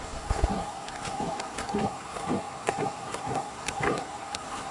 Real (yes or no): no